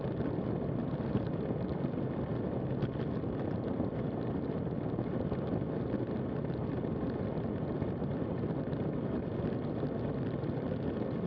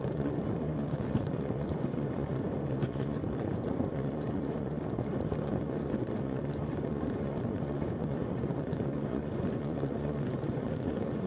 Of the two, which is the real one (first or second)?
first